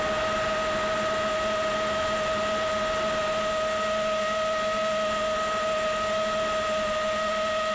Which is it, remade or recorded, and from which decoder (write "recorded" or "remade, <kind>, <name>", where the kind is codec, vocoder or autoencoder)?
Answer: recorded